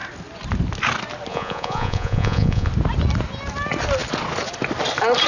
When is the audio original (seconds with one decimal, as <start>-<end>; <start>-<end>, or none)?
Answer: 0.0-1.3; 2.7-5.3